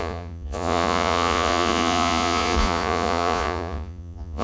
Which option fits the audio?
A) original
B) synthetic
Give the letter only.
B